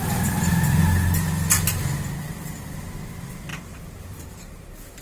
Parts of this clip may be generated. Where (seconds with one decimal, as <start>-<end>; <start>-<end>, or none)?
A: 0.0-0.5; 2.2-5.0

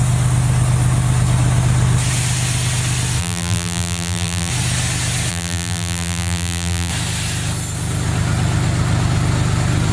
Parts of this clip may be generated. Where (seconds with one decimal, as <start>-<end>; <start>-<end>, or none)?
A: 3.2-4.5; 5.3-6.9

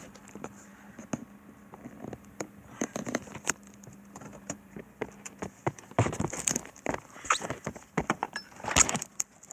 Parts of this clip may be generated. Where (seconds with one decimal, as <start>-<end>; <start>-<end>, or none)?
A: 0.0-0.7; 1.9-9.5

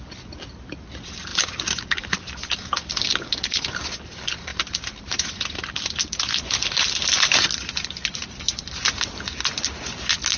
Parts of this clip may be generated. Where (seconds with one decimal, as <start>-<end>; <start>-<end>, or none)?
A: 4.5-5.3

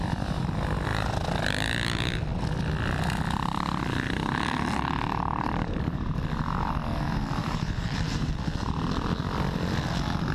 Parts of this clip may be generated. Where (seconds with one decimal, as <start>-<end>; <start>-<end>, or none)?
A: 7.4-8.3

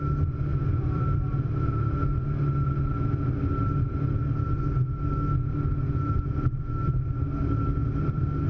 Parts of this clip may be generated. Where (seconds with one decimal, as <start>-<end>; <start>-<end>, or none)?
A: 0.5-2.0; 7.8-8.5

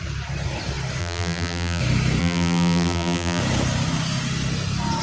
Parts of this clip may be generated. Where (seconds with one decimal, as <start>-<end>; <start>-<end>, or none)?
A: 1.0-1.8; 2.2-3.4

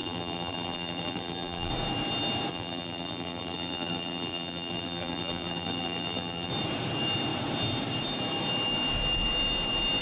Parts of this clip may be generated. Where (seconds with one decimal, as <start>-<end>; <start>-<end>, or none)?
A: 0.0-1.7; 2.5-6.5